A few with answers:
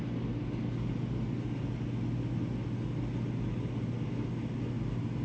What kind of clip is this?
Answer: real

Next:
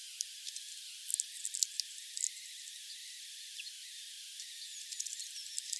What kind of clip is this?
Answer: real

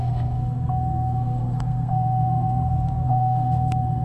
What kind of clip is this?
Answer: fake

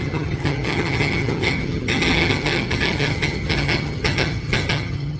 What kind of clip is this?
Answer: fake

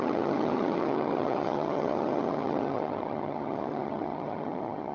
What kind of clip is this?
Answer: fake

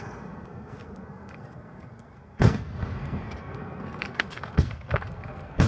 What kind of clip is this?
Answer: fake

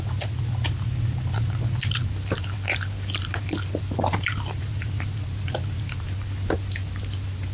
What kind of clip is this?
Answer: real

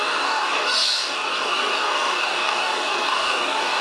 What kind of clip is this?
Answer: fake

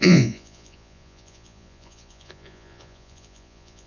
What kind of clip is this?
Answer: fake